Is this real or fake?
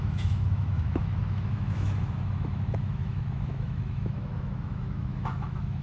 fake